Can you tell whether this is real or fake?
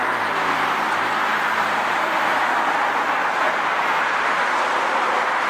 real